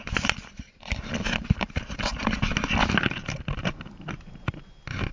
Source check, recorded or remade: recorded